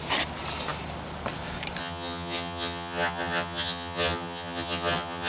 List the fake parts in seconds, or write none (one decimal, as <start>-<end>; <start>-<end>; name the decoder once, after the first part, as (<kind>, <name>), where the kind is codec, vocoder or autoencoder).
1.8-5.3 (vocoder, HiFi-GAN)